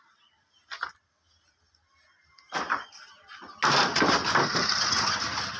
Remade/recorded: recorded